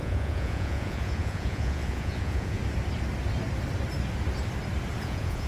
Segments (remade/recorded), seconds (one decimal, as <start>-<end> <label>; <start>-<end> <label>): 0.0-2.6 remade; 2.6-5.0 recorded; 5.0-5.5 remade